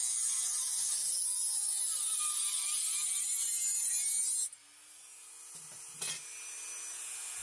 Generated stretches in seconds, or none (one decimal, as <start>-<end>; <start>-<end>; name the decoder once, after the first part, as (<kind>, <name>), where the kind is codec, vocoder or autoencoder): none

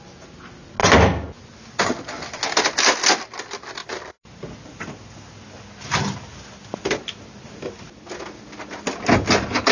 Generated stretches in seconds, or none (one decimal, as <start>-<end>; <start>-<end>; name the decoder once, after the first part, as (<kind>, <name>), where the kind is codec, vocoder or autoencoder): none

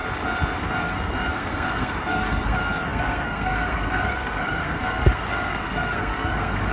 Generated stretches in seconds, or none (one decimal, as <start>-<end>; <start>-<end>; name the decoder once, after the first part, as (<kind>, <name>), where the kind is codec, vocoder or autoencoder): 0.8-6.7 (codec, SNAC)

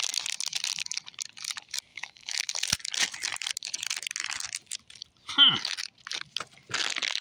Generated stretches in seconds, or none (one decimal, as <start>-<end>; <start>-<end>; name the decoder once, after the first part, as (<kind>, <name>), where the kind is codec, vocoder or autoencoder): 1.9-2.5 (autoencoder, DAC-VAE)

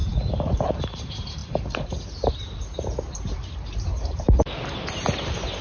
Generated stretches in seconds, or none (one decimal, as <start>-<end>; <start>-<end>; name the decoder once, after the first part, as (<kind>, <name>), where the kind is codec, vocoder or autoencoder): 0.0-5.6 (vocoder, BigVGAN v2)

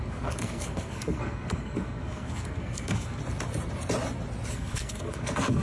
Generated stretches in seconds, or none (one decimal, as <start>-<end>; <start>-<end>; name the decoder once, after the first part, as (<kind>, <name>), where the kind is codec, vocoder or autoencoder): 0.0-3.2 (codec, SNAC); 4.5-5.6

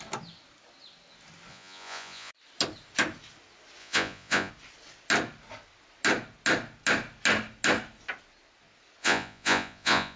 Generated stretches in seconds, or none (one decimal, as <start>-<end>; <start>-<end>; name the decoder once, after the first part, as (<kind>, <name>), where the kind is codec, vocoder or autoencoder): 1.5-2.3 (vocoder, Vocos); 3.8-4.5; 9.0-10.2